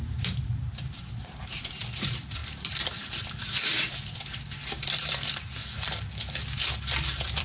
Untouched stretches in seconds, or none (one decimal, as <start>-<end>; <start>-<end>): 5.6-7.4